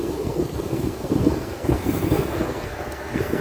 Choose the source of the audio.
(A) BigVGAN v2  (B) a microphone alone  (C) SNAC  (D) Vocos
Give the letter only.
C